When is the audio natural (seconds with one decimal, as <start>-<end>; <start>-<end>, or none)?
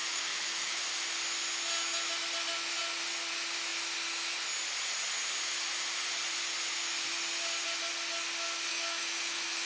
0.8-8.7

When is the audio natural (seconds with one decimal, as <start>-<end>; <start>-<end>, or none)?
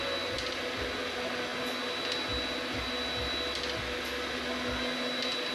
0.0-5.5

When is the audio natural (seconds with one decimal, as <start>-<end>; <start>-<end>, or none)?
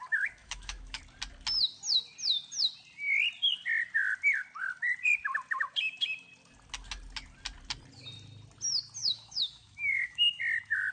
0.0-0.4; 1.0-9.0; 10.4-10.9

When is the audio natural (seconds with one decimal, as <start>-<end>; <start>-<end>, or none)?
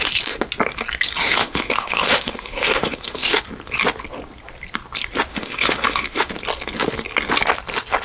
0.0-1.2; 3.4-5.3; 6.3-8.0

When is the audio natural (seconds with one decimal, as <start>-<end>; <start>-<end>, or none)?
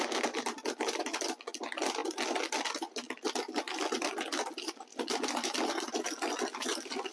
0.0-7.1